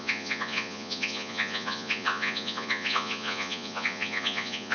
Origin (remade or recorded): remade